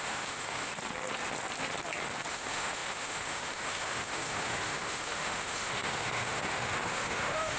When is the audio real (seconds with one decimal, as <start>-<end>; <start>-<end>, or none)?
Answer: 0.7-2.3